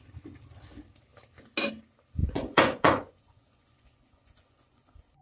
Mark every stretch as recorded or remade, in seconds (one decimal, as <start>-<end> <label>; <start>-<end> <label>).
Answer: 0.0-2.2 recorded; 2.2-5.2 remade